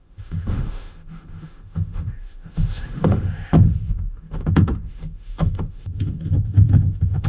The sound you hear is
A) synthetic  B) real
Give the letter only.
A